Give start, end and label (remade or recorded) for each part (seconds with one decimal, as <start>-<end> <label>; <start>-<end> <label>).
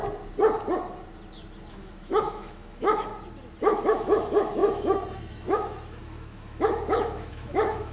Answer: 0.0-1.7 recorded; 1.7-3.1 remade; 3.1-3.6 recorded; 3.6-7.9 remade